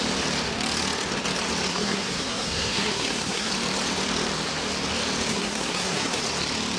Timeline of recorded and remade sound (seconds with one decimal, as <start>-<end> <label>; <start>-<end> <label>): 0.0-1.7 recorded; 1.7-3.5 remade; 3.5-5.3 recorded; 5.3-6.2 remade; 6.2-6.8 recorded